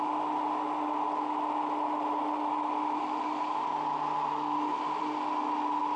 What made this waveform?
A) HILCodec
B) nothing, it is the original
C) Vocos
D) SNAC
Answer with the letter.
B